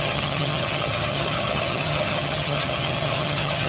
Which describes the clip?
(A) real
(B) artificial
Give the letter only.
B